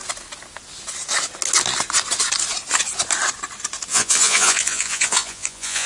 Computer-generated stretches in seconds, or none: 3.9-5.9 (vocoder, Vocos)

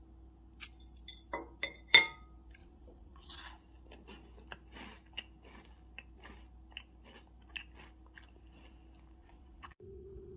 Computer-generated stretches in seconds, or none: 2.6-3.4 (vocoder, Vocos); 9.2-10.4

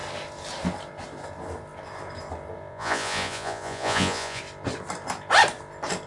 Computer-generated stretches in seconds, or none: 2.7-4.4 (vocoder, Vocos)

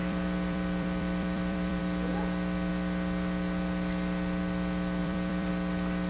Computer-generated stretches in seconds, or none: 0.0-1.8 (vocoder, BigVGAN v2); 5.0-5.5

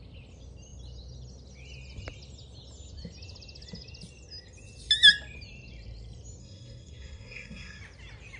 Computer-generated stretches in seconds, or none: 6.4-7.8 (codec, SNAC)